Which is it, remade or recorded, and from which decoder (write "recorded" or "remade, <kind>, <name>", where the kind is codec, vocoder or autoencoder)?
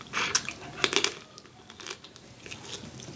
recorded